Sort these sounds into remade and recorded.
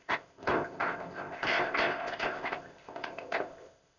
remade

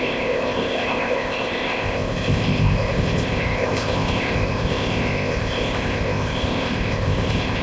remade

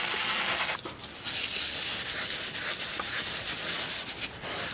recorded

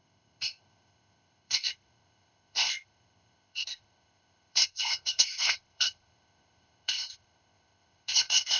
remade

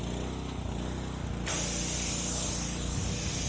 recorded